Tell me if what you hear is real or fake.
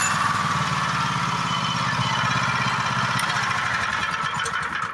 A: real